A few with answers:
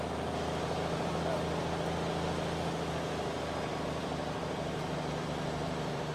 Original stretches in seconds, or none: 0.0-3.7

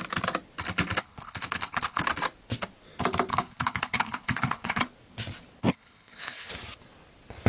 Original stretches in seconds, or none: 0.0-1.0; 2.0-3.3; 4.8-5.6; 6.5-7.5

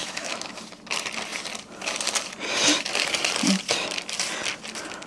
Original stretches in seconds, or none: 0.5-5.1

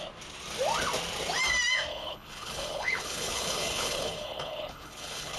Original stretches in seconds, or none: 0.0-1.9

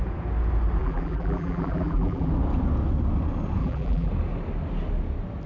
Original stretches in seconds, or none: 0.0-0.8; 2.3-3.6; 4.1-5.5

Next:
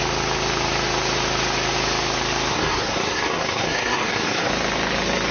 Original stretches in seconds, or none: 0.0-2.5; 4.5-5.3

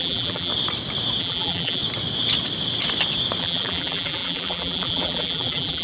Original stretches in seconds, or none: 0.5-1.2; 1.8-3.4

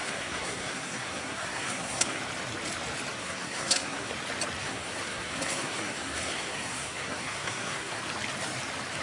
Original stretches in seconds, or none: 2.2-3.2; 4.1-4.6; 8.0-9.0